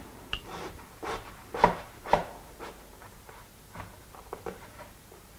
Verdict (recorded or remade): remade